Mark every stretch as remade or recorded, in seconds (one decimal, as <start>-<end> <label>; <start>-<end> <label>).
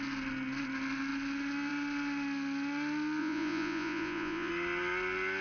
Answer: 0.0-3.2 recorded; 3.2-4.5 remade; 4.5-5.4 recorded